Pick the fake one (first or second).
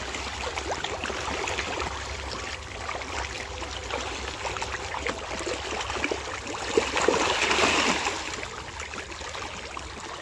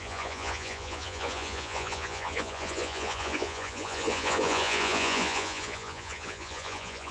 second